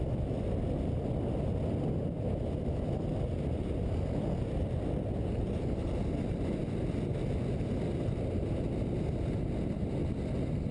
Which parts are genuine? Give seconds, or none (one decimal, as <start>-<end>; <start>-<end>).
0.0-10.7